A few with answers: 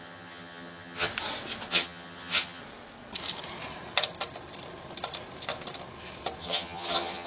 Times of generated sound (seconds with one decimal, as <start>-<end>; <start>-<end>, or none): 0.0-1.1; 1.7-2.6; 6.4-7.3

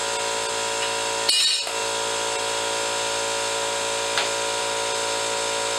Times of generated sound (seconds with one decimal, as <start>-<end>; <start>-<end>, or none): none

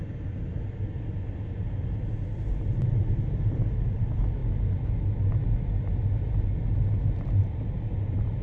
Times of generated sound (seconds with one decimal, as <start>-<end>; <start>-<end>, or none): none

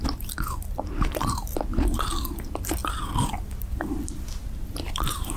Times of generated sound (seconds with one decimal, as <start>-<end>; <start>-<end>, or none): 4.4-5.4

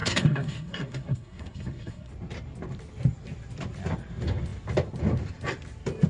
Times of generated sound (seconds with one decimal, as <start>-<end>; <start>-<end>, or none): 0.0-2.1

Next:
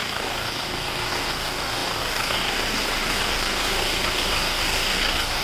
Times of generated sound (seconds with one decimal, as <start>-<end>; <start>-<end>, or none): 0.0-5.4

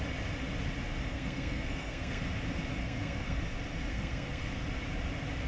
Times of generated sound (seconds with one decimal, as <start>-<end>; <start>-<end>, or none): 1.1-2.2; 2.8-3.4; 3.9-4.6

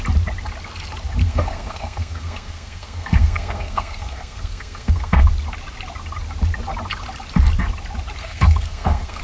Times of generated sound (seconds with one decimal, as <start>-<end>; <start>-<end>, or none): 1.2-5.3; 8.2-9.2